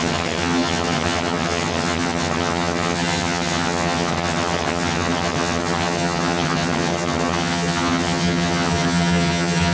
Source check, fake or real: fake